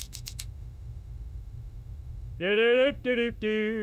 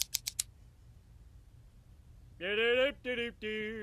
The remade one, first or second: first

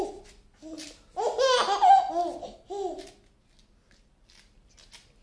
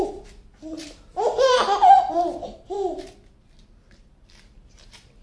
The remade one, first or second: second